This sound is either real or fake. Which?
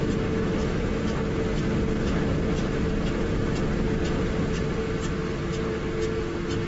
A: real